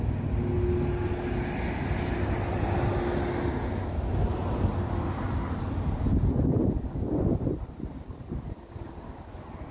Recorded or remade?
recorded